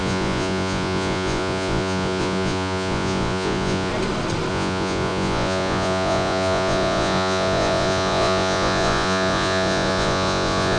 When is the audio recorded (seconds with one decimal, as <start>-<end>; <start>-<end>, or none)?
3.9-4.5